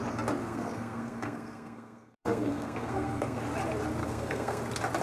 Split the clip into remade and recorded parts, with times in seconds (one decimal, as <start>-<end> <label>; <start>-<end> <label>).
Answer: 0.0-0.4 recorded; 0.4-3.4 remade; 3.4-4.0 recorded; 4.0-4.6 remade; 4.6-5.0 recorded